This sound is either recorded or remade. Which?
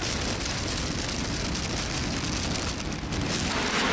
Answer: recorded